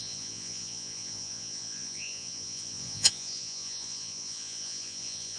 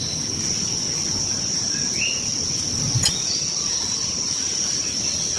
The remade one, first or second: first